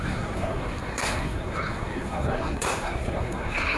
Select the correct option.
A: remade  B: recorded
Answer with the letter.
A